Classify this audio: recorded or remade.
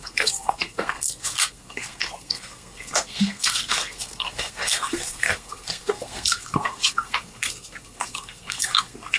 remade